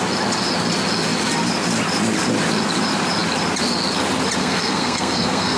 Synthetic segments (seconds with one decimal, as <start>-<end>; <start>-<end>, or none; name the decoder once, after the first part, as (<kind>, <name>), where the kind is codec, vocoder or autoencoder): 4.4-5.6 (codec, SNAC)